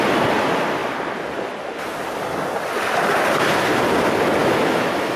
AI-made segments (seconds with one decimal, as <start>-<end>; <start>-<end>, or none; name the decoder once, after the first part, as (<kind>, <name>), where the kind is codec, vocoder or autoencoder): 4.4-5.2 (autoencoder, DAC-VAE)